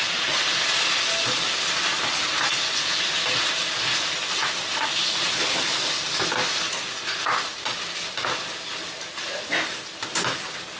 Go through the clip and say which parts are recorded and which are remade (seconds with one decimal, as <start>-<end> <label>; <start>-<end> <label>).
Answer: 0.0-10.8 recorded